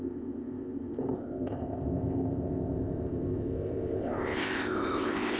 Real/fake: fake